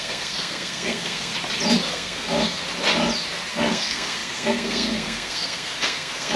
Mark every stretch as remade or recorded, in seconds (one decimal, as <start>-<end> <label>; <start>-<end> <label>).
0.0-1.3 remade; 1.3-1.9 recorded; 1.9-2.6 remade; 2.6-3.5 recorded; 3.5-6.4 remade